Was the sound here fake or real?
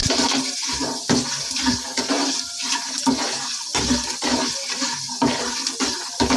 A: real